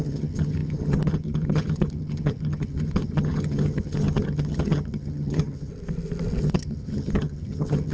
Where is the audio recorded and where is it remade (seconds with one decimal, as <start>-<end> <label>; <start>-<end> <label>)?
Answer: 0.0-5.7 remade; 5.7-6.4 recorded; 6.4-7.9 remade

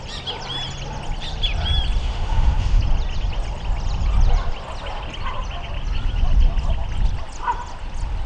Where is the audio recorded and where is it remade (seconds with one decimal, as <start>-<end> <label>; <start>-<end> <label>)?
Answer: 0.0-2.0 recorded; 2.0-2.8 remade; 2.8-8.3 recorded

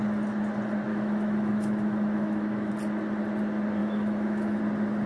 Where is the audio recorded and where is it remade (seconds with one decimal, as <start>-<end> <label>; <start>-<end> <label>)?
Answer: 0.0-0.9 recorded; 0.9-2.7 remade; 2.7-3.8 recorded; 3.8-4.6 remade; 4.6-5.1 recorded

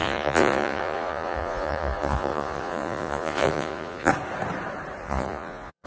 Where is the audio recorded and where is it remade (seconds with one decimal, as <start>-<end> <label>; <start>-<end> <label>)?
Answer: 0.0-4.1 remade; 4.1-5.0 recorded; 5.0-5.9 remade

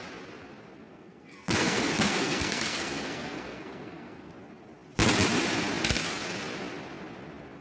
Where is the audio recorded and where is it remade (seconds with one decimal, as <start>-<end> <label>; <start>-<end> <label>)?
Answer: 0.0-0.9 recorded; 0.9-4.3 remade; 4.3-7.6 recorded

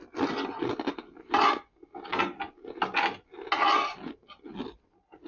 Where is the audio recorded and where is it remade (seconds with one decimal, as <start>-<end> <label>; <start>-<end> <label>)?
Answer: 0.0-5.3 recorded